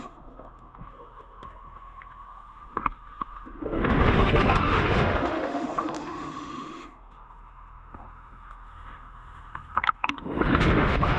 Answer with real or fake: fake